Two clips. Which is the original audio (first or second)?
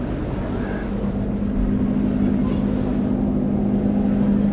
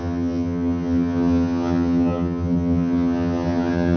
first